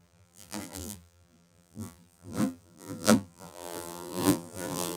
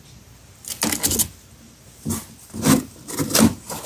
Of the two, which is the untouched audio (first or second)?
second